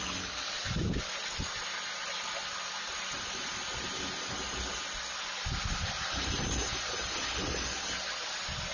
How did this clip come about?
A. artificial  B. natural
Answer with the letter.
B